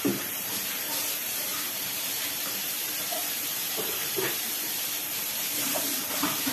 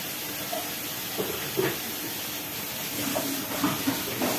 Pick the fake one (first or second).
first